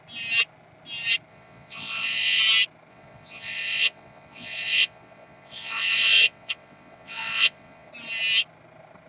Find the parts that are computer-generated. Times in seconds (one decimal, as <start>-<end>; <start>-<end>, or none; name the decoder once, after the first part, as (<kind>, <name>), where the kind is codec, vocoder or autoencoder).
1.3-2.4 (vocoder, Vocos); 2.9-7.9